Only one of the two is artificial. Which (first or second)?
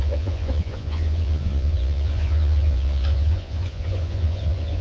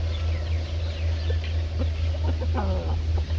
first